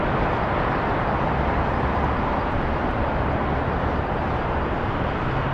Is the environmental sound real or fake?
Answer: real